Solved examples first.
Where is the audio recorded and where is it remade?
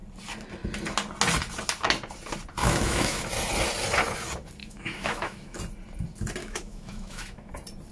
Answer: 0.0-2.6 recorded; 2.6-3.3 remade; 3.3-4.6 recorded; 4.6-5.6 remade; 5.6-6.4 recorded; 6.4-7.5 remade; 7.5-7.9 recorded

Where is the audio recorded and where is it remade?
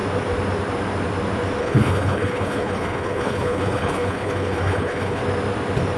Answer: 0.0-1.6 recorded; 1.6-5.2 remade; 5.2-6.0 recorded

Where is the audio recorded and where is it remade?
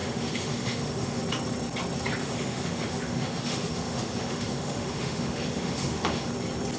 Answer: 0.0-1.2 remade; 1.2-2.2 recorded; 2.2-6.3 remade; 6.3-6.8 recorded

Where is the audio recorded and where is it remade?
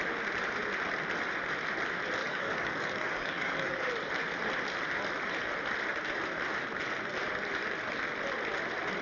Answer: 0.0-2.2 recorded; 2.2-3.9 remade; 3.9-9.0 recorded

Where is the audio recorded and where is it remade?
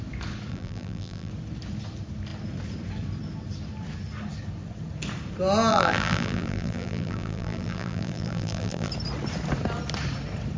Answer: 0.0-0.5 recorded; 0.5-1.3 remade; 1.3-5.7 recorded; 5.7-8.9 remade; 8.9-10.6 recorded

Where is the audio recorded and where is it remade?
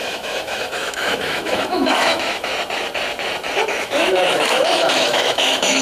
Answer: 0.0-2.5 remade; 2.5-3.7 recorded; 3.7-5.8 remade